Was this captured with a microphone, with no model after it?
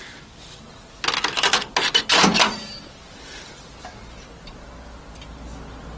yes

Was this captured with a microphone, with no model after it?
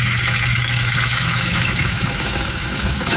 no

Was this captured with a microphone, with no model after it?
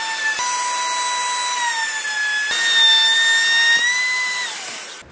yes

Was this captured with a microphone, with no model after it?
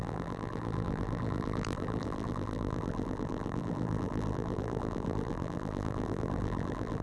no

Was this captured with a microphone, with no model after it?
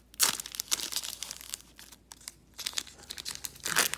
yes